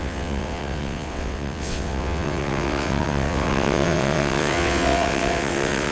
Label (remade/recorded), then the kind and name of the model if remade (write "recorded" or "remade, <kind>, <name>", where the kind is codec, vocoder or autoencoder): remade, vocoder, WaveNeXt